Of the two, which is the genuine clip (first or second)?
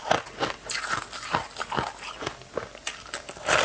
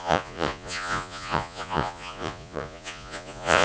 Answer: first